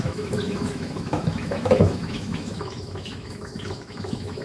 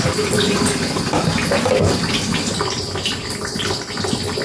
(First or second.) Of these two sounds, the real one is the second